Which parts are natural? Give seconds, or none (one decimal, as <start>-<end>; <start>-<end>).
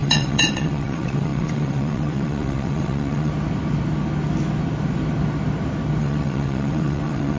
3.3-6.0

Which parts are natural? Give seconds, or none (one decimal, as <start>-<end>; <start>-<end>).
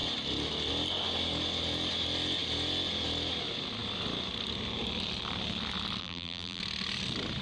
0.0-6.0; 6.6-7.4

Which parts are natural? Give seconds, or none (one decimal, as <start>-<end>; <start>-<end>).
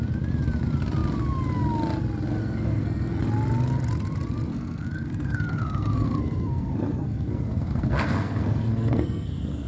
0.0-2.4; 3.2-4.5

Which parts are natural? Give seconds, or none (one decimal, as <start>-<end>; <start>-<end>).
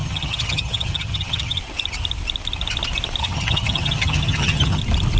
1.6-3.2; 4.8-5.2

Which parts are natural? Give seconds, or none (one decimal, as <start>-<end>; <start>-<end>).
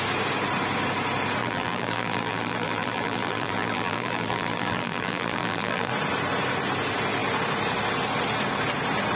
0.0-1.4; 5.9-9.2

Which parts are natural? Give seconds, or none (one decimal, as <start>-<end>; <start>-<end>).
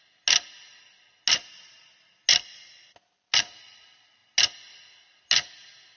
0.0-6.0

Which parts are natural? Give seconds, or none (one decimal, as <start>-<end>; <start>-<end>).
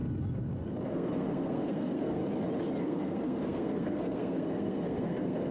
0.0-0.9; 2.2-2.8